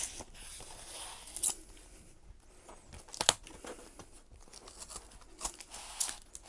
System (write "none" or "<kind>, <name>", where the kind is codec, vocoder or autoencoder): none